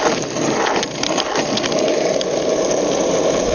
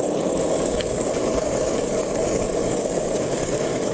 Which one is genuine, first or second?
first